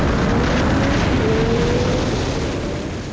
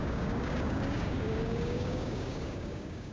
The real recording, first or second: first